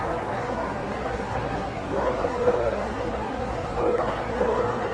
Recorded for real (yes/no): no